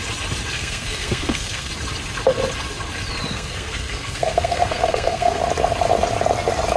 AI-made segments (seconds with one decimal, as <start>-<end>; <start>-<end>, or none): 0.5-1.7; 3.3-5.4